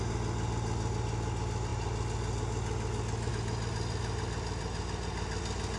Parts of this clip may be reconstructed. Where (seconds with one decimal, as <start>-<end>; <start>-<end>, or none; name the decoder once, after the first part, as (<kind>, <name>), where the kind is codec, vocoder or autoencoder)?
none

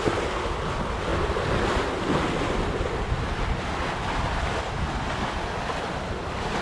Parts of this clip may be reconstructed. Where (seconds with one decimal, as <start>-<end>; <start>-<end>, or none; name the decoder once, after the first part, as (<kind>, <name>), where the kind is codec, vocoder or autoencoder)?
none

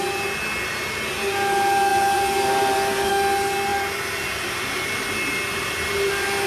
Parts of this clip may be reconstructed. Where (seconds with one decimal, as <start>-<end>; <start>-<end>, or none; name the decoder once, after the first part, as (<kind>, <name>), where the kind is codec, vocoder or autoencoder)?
1.9-3.1 (vocoder, BigVGAN v2); 3.7-6.1

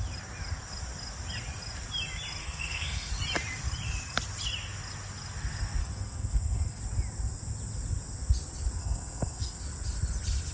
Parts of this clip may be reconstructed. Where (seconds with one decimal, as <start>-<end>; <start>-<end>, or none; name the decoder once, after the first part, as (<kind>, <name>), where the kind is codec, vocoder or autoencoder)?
2.4-3.1 (codec, SNAC); 5.8-6.8; 8.8-9.6

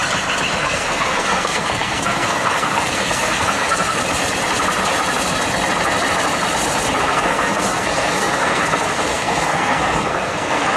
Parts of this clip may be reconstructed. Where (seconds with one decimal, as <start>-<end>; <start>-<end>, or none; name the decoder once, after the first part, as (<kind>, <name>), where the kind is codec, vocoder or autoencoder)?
0.6-4.0 (codec, SNAC); 7.0-10.8

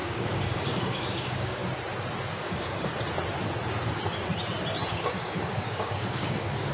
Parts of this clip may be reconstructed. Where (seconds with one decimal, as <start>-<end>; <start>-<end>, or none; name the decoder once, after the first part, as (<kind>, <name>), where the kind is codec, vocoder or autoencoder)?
0.0-1.6 (codec, DAC); 2.3-2.9; 4.9-6.7